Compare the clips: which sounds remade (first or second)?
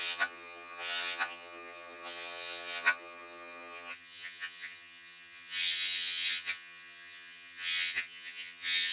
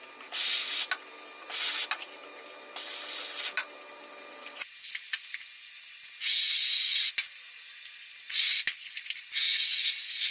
first